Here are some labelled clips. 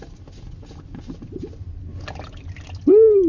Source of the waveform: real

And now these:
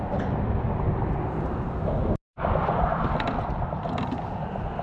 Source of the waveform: real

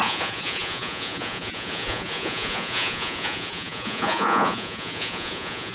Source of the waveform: fake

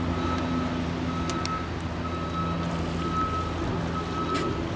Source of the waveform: real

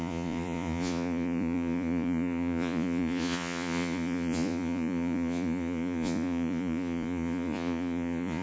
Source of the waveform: fake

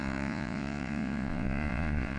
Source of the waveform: fake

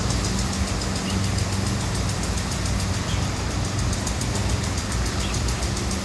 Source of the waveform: real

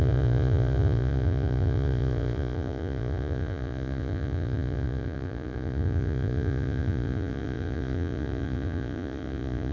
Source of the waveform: fake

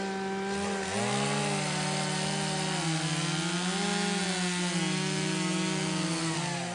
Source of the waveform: real